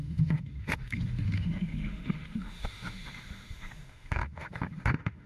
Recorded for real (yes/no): no